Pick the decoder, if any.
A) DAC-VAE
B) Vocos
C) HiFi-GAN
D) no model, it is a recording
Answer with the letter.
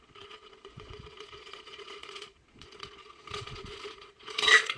B